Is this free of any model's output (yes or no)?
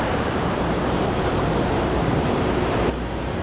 no